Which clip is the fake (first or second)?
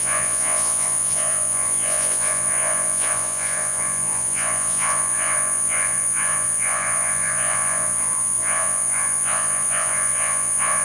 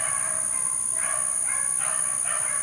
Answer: first